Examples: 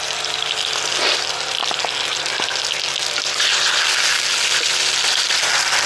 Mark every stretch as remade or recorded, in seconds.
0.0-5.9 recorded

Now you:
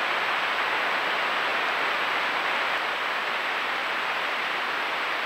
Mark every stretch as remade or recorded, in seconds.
0.0-1.5 recorded; 1.5-2.0 remade; 2.0-3.2 recorded; 3.2-5.3 remade

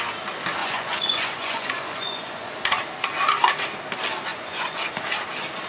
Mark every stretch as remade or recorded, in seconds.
0.0-0.6 recorded; 0.6-2.5 remade; 2.5-4.3 recorded; 4.3-5.0 remade; 5.0-5.7 recorded

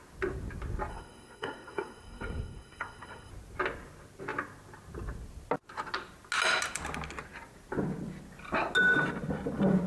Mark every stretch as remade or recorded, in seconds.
0.0-0.9 recorded; 0.9-3.3 remade; 3.3-9.9 recorded

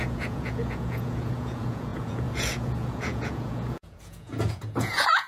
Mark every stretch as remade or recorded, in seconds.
0.0-5.3 remade

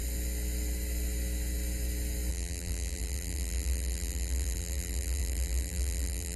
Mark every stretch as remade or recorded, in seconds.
0.0-2.3 recorded; 2.3-6.4 remade